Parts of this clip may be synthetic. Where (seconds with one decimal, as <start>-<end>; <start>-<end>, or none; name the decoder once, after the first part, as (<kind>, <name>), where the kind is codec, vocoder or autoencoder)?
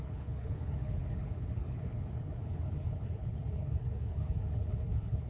0.0-5.3 (codec, HILCodec)